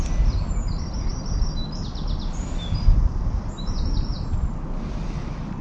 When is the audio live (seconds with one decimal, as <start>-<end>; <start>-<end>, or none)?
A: 0.0-5.6